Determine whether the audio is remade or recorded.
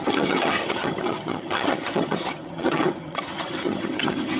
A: remade